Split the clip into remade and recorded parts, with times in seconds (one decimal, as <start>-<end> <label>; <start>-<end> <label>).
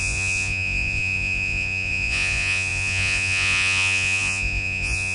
0.0-5.1 remade